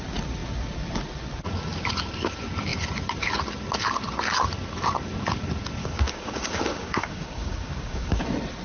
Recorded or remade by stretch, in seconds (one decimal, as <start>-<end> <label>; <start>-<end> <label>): 0.0-5.8 recorded; 5.8-8.2 remade; 8.2-8.6 recorded